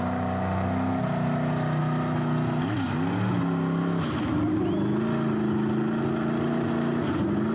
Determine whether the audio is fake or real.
real